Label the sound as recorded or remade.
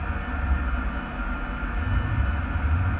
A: recorded